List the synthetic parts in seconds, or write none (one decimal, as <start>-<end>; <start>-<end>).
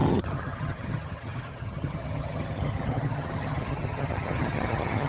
0.0-5.1